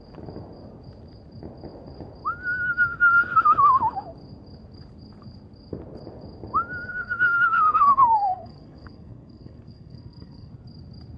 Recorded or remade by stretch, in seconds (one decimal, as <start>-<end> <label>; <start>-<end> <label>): 0.0-6.9 recorded; 6.9-10.5 remade; 10.5-11.2 recorded